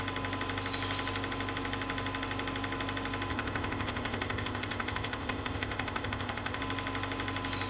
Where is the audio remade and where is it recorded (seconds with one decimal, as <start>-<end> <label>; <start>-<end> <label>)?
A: 0.0-3.3 recorded; 3.3-6.6 remade; 6.6-7.7 recorded